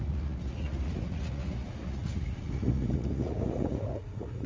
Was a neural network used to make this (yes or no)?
yes